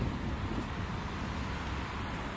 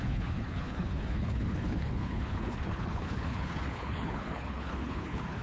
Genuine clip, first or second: first